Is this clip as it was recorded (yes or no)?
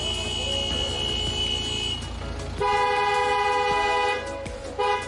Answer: yes